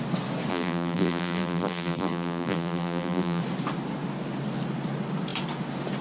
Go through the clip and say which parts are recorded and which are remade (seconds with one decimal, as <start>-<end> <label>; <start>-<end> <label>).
0.0-0.5 recorded; 0.5-3.4 remade; 3.4-6.0 recorded